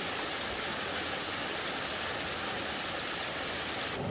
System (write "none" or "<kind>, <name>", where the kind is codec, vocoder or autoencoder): none